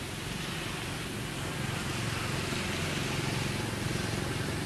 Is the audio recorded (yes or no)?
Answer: yes